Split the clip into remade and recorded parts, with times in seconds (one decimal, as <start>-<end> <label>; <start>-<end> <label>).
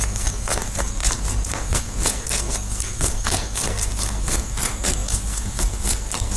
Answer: 0.0-6.4 remade